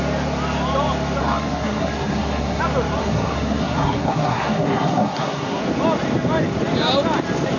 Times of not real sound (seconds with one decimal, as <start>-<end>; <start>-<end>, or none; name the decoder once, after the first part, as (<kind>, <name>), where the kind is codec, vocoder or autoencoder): 1.2-2.6 (codec, SNAC); 3.0-5.6